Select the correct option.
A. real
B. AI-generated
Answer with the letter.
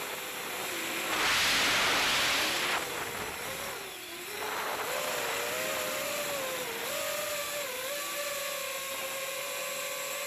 A